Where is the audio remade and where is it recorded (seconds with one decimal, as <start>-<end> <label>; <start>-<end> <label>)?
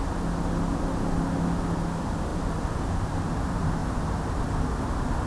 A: 0.0-5.3 recorded